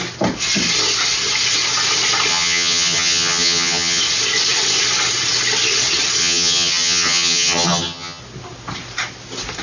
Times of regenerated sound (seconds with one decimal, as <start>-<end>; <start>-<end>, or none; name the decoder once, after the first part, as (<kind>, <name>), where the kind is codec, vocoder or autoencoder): 2.3-4.0 (vocoder, HiFi-GAN); 6.2-8.2